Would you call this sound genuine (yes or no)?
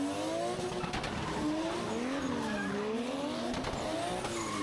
yes